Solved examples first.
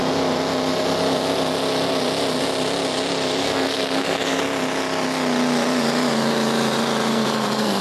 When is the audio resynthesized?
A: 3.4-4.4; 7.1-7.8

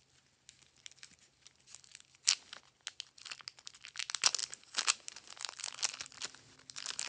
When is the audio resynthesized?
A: none

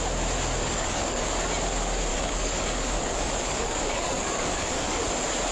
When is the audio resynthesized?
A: 0.6-1.3; 2.1-5.1

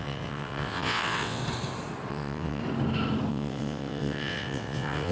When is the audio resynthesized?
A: 0.0-1.4; 2.1-2.6; 3.3-5.1

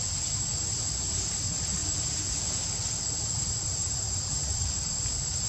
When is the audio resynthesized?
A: 3.8-4.9

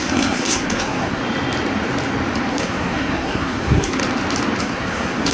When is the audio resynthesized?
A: 0.0-1.2; 2.5-4.0; 4.6-5.3

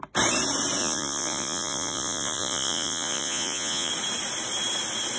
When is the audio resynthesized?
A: 0.8-3.9

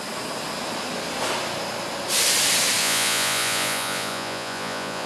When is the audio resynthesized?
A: 2.8-5.1